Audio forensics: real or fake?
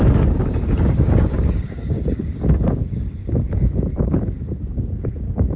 fake